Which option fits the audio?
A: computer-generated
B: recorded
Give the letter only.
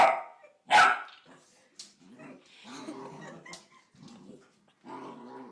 B